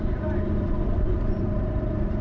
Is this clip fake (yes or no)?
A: yes